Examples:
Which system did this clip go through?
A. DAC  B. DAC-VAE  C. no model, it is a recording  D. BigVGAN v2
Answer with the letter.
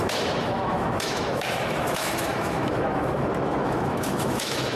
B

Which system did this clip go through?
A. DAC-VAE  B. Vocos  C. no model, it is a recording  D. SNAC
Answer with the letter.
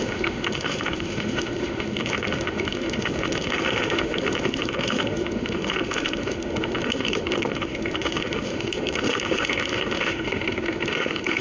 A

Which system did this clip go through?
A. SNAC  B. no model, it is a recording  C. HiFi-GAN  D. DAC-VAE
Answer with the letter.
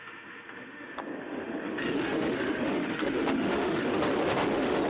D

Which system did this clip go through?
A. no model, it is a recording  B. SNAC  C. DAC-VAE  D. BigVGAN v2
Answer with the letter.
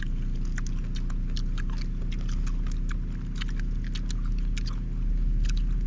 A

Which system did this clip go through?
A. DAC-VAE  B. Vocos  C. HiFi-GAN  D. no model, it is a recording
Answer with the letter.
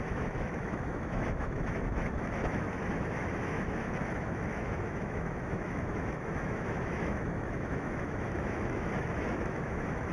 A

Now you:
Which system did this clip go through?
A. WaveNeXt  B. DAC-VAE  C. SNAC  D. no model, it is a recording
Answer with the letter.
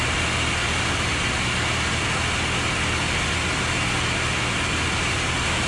D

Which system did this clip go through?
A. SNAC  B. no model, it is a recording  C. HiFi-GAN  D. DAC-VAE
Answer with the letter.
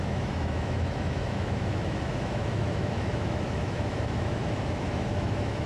D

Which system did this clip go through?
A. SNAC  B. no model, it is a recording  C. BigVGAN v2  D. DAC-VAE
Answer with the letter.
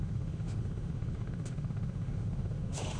D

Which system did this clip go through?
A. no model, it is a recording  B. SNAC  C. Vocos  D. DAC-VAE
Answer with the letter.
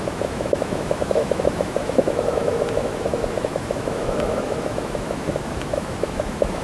D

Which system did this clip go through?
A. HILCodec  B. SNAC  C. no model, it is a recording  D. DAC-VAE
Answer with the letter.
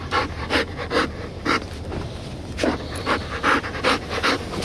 C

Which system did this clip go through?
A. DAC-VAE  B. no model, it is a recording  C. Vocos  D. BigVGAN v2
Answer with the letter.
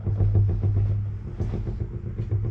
B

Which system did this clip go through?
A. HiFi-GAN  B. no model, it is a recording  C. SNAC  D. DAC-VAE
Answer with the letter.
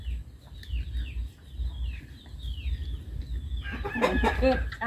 B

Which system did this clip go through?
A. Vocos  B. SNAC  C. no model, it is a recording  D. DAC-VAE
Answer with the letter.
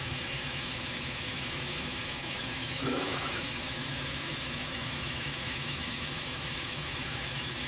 D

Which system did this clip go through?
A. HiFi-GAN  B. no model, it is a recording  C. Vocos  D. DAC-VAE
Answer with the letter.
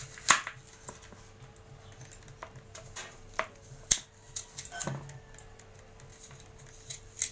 B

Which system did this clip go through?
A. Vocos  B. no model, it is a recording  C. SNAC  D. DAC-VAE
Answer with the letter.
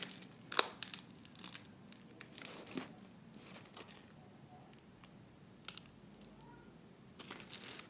B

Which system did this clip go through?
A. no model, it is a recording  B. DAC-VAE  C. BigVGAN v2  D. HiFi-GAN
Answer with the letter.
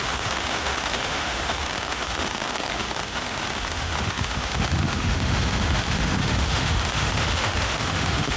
B